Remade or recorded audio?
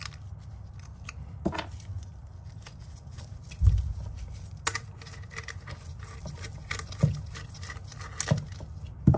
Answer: recorded